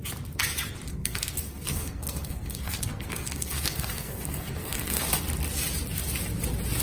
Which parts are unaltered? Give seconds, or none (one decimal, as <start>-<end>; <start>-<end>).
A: 0.0-0.9; 5.0-6.8